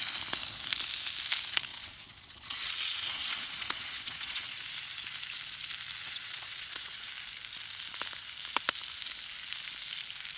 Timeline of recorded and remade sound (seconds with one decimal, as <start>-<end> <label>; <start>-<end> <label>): 0.0-1.7 recorded; 1.7-4.6 remade; 4.6-6.0 recorded; 6.0-7.1 remade; 7.1-10.4 recorded